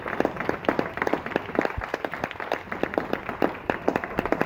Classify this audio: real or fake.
fake